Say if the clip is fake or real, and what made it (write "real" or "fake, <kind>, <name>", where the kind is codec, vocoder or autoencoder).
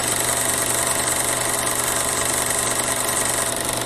real